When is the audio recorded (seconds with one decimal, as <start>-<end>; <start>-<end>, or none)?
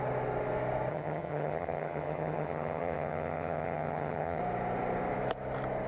0.0-0.9; 4.4-5.9